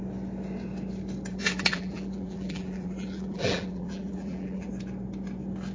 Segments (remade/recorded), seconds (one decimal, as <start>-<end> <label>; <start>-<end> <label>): 0.0-1.3 recorded; 1.3-4.7 remade; 4.7-5.7 recorded